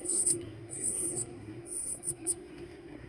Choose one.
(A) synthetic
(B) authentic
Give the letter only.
A